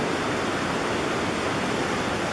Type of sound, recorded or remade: recorded